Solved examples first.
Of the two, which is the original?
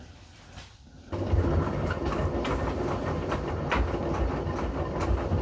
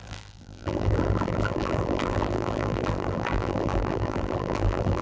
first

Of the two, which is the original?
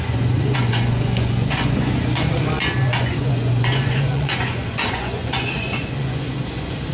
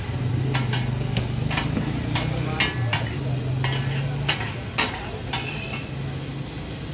second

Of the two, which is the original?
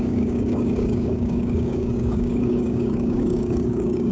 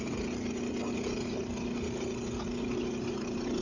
second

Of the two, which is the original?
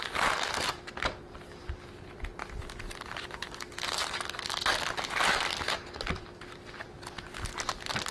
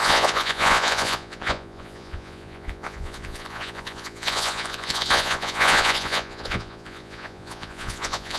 first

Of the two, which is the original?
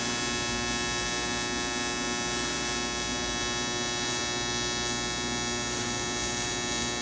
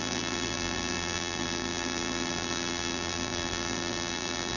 first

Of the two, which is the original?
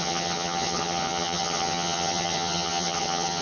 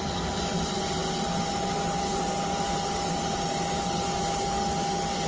second